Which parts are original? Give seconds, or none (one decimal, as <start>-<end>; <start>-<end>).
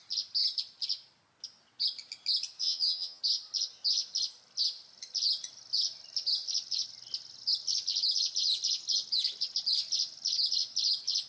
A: 0.0-2.6; 3.2-11.3